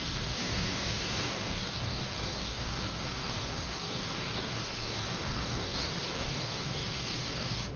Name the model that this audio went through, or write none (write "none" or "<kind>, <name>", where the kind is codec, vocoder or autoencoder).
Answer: codec, DAC